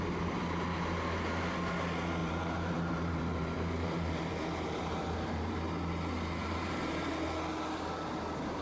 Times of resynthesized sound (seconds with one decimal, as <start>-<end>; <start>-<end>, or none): 2.2-5.5; 6.4-7.1